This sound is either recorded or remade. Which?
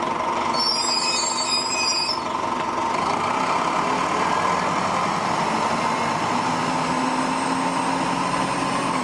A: recorded